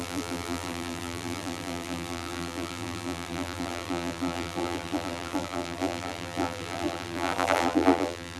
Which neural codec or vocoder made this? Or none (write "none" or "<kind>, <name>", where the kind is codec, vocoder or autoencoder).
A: vocoder, BigVGAN v2